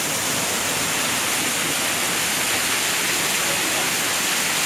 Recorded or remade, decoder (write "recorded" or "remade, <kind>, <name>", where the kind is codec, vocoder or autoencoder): recorded